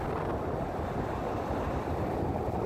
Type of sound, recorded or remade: remade